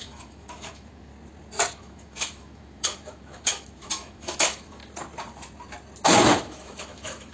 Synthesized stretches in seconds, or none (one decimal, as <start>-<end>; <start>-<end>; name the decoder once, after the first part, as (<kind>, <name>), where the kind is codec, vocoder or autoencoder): 0.0-1.1 (autoencoder, DAC-VAE); 1.7-4.8; 6.4-7.3